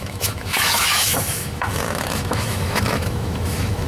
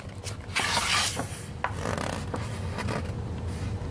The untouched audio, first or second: second